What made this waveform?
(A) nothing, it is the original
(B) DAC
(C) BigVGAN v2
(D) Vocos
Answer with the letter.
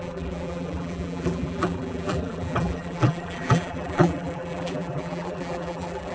C